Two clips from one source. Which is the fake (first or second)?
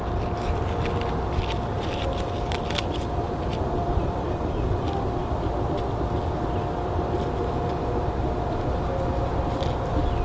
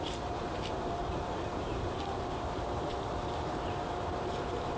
second